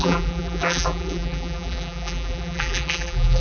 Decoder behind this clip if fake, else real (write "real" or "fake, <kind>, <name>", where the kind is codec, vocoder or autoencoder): fake, vocoder, BigVGAN v2